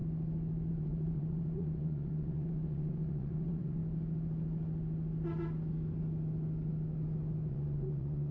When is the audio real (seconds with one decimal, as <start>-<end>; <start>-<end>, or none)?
0.0-0.7; 3.8-7.5